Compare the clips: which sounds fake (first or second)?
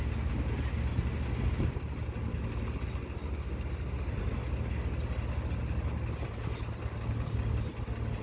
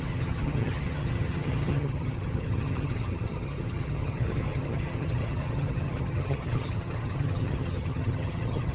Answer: second